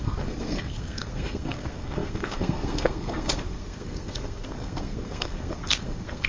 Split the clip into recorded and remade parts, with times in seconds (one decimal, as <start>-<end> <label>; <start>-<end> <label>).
0.0-6.3 remade